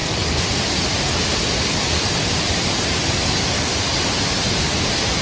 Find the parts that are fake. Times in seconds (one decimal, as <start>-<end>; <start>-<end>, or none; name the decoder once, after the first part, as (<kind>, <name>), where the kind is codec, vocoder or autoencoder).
none